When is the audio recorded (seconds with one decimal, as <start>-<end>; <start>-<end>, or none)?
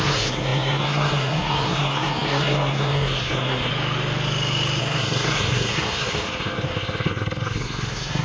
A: 3.7-4.8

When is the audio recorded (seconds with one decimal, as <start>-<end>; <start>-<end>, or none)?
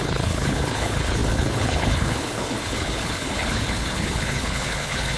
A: none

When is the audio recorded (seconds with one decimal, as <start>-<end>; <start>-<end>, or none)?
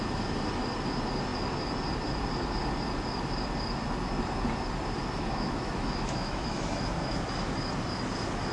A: 0.0-5.0; 6.9-8.5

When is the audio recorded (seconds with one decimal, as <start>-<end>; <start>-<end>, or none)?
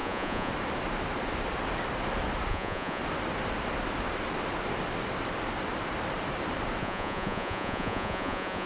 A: 0.5-2.5; 3.0-6.8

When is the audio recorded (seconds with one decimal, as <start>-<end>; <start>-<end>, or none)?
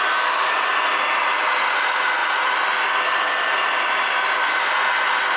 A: 0.0-5.4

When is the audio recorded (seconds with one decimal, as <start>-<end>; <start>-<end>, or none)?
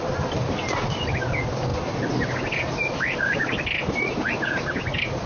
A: 0.0-5.3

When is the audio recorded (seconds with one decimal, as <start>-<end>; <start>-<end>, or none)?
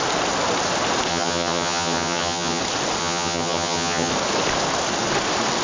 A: 0.0-1.1; 2.6-3.0; 4.1-5.6